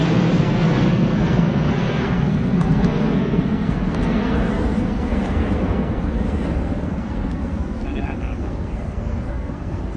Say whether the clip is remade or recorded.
remade